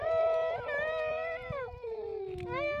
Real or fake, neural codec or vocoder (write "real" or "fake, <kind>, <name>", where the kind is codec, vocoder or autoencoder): real